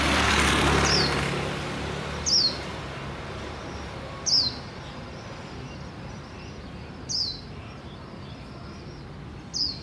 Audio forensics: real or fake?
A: real